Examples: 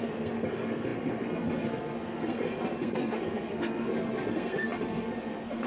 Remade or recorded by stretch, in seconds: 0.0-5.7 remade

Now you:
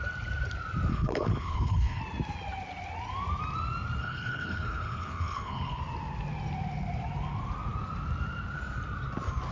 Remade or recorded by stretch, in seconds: 0.0-0.9 recorded; 0.9-2.0 remade; 2.0-4.0 recorded; 4.0-5.8 remade; 5.8-9.5 recorded

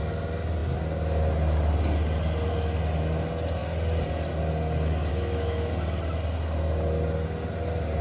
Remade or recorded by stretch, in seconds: 0.0-5.1 recorded; 5.1-5.7 remade; 5.7-8.0 recorded

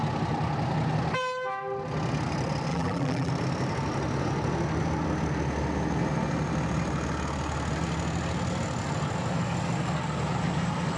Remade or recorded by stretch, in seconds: 0.0-2.7 recorded; 2.7-3.3 remade; 3.3-11.0 recorded